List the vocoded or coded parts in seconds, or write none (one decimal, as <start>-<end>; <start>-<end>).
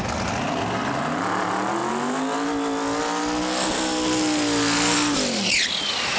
none